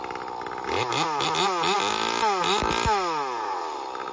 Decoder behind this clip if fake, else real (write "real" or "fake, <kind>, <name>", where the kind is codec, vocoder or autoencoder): real